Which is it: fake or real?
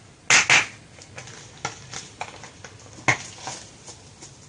real